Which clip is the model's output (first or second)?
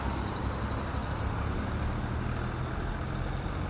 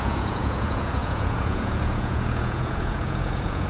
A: second